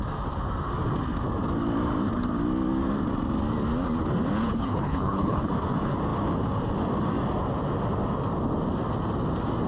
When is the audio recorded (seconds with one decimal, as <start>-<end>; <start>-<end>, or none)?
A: 0.0-4.5; 5.5-9.7